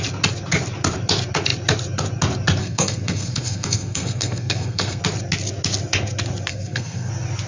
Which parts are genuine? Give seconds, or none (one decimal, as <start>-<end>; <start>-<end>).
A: 0.0-2.6; 5.0-6.5; 7.1-7.5